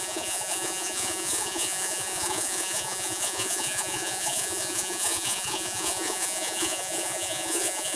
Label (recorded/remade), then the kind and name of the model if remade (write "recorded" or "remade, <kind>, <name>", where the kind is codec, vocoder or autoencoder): remade, vocoder, Vocos